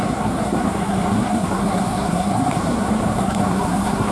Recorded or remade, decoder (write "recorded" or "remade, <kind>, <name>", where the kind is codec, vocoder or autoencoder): remade, codec, SNAC